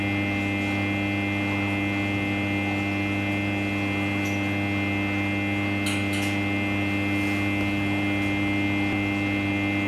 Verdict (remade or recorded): recorded